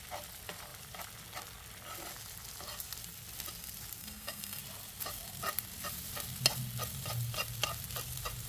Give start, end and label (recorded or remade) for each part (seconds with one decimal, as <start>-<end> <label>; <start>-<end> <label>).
0.0-4.0 recorded; 4.0-4.6 remade; 4.6-8.5 recorded